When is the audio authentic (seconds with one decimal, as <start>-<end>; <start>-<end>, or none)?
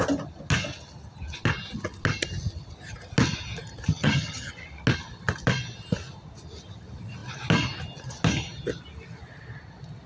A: 0.0-3.9; 4.5-10.1